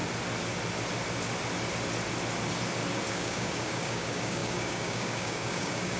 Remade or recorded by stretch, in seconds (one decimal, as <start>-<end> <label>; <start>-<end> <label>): 0.0-3.1 recorded; 3.1-6.0 remade